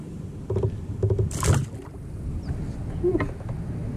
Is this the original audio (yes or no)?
yes